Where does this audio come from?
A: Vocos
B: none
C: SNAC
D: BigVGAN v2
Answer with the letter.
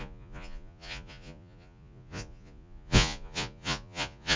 A